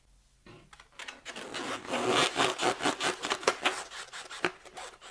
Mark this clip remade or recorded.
recorded